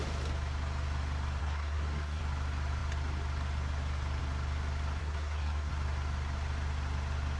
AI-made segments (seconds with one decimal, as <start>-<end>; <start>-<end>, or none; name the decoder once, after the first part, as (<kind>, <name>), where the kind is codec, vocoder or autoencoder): 1.4-2.2 (codec, SNAC); 5.0-5.7